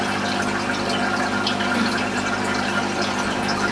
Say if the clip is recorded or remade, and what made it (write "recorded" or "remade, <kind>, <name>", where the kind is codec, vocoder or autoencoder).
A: recorded